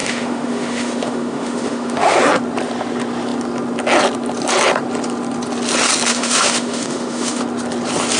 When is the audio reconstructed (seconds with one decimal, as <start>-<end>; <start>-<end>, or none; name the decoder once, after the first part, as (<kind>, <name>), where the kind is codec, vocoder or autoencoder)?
0.0-2.2 (autoencoder, DAC-VAE); 6.1-7.4